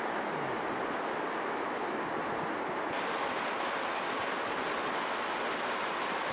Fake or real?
real